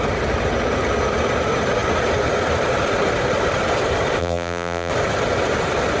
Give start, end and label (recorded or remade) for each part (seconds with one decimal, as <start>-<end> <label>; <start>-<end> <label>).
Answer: 0.0-4.2 recorded; 4.2-4.9 remade; 4.9-6.0 recorded